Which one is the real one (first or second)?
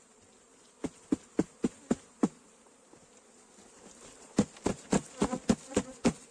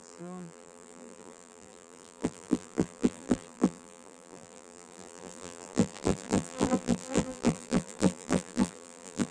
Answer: first